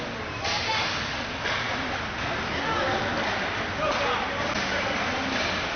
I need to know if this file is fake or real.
real